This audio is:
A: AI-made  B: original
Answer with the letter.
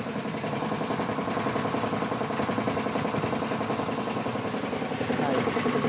B